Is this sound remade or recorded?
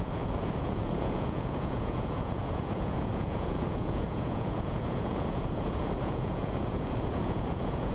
remade